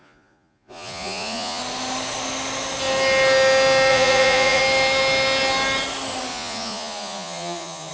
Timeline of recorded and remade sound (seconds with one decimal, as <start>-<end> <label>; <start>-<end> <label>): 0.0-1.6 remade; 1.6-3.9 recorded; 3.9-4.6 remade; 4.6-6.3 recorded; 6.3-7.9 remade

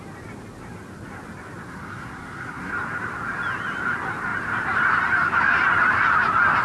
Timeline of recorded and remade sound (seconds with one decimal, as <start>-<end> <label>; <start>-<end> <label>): 0.0-1.7 recorded; 1.7-2.7 remade; 2.7-6.6 recorded

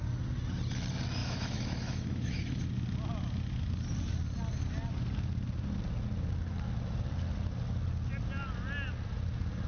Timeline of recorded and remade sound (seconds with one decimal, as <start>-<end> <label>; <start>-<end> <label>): 0.0-1.2 recorded; 1.2-2.6 remade; 2.6-9.7 recorded